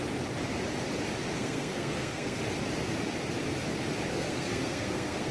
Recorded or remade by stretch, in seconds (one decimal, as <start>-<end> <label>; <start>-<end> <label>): 0.0-1.3 recorded; 1.3-2.4 remade; 2.4-4.1 recorded; 4.1-5.3 remade